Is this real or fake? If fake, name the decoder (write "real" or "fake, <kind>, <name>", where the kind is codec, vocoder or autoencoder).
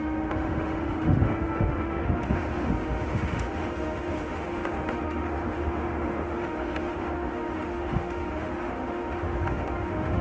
fake, autoencoder, DAC-VAE